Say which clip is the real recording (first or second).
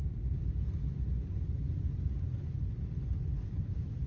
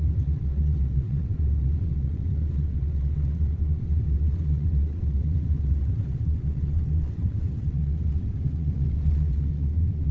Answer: first